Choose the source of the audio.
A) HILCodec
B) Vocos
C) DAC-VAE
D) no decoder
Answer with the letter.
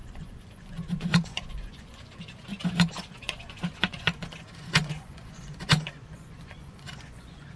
B